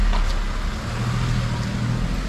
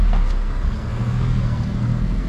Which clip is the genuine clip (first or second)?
first